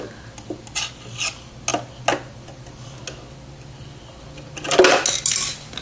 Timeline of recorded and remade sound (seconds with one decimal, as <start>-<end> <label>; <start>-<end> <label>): 0.0-5.8 recorded